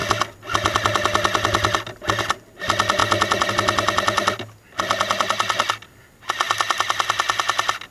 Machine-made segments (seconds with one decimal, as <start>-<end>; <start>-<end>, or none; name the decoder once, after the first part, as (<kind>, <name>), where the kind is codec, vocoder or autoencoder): none